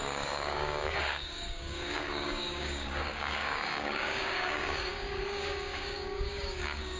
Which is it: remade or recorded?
remade